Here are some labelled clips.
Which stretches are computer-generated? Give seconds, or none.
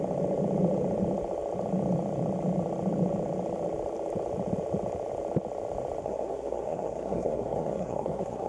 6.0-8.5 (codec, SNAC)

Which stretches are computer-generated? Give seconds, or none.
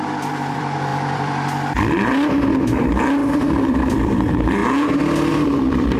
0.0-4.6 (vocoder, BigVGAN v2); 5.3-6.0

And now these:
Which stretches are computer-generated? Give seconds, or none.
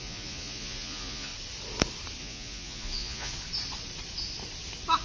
0.0-1.3 (vocoder, Vocos); 2.2-3.3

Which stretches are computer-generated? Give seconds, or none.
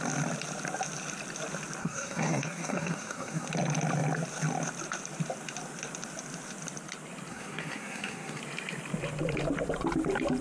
1.8-3.5 (codec, SNAC); 7.3-8.4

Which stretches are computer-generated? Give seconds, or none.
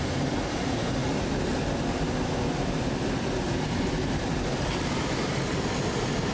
none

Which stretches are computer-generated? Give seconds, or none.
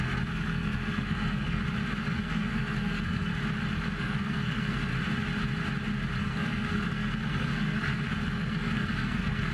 0.0-1.6 (codec, SNAC); 2.1-3.3; 4.0-4.9; 6.2-9.5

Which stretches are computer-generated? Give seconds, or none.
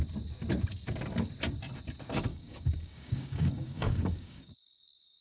2.3-5.2 (codec, DAC)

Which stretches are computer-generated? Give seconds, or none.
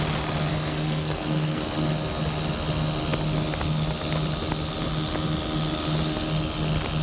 0.5-1.6 (codec, SNAC)